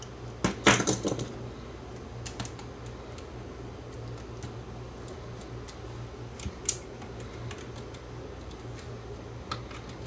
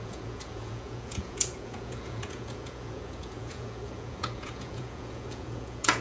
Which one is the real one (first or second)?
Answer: first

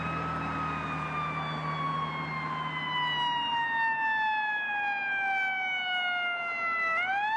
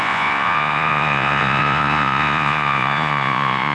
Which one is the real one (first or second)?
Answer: first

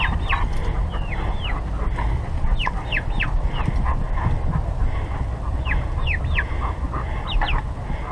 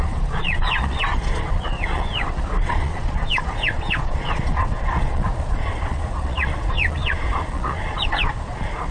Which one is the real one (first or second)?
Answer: first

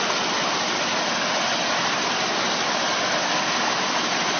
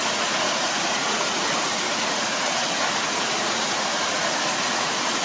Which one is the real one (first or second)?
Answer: first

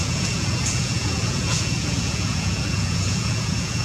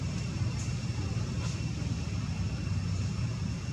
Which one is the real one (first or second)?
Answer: second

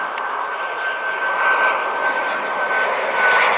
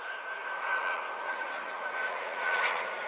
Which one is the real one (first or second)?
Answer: first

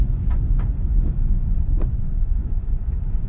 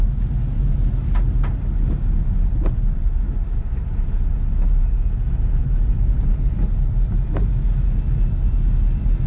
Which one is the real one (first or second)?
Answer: second